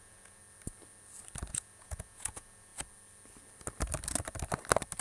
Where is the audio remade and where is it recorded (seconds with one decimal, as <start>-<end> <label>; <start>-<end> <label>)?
0.0-0.4 remade; 0.4-1.5 recorded; 1.5-2.7 remade; 2.7-5.0 recorded